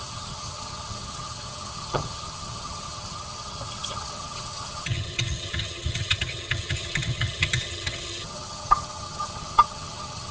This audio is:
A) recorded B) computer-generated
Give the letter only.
B